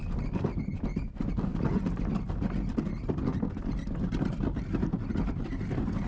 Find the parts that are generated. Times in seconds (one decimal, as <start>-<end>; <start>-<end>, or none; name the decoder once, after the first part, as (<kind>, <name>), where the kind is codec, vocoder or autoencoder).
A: none